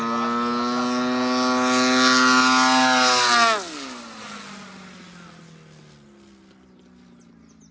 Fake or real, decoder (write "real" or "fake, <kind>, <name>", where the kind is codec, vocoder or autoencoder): real